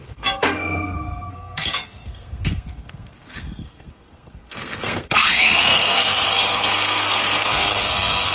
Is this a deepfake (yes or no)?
yes